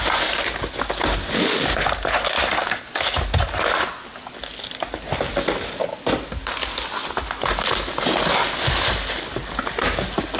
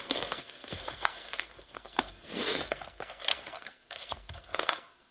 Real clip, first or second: first